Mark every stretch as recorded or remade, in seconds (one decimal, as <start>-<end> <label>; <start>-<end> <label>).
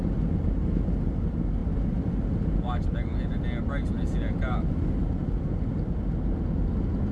0.0-7.1 recorded